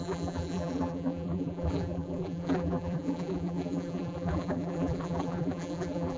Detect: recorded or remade remade